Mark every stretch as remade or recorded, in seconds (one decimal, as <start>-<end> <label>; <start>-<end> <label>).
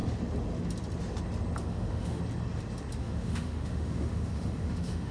0.0-1.6 recorded; 1.6-2.2 remade; 2.2-3.0 recorded; 3.0-5.1 remade